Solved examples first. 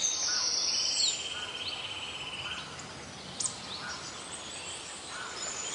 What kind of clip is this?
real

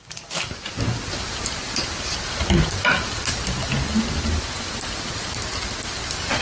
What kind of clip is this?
real